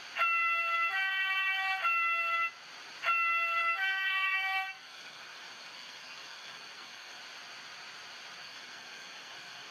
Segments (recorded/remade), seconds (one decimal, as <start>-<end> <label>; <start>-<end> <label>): 0.0-3.6 recorded; 3.6-7.2 remade; 7.2-8.4 recorded; 8.4-9.7 remade